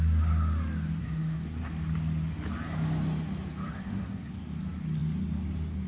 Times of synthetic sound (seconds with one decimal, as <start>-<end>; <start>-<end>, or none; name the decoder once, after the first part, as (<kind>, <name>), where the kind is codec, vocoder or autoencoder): 1.0-1.7 (codec, SNAC); 3.7-4.3